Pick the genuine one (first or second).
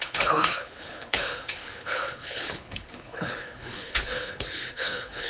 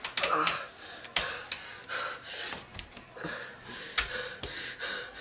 second